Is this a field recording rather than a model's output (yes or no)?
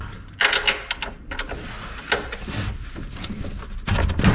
yes